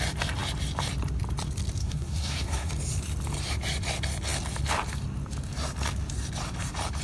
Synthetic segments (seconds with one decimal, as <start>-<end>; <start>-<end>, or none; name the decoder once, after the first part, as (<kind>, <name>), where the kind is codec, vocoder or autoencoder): 1.8-2.7 (codec, SNAC)